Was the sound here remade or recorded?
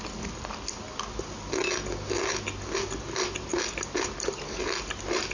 recorded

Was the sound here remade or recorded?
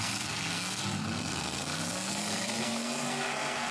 remade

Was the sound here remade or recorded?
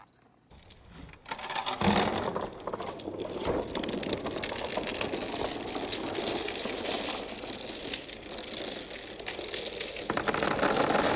recorded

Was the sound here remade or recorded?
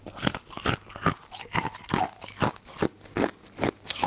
recorded